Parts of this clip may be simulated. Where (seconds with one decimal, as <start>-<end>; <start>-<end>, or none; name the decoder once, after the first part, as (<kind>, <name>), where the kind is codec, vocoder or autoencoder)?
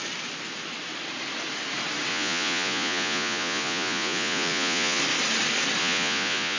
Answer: 2.1-5.0 (vocoder, Vocos); 5.8-6.6